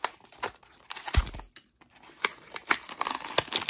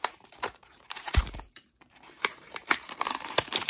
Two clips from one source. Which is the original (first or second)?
first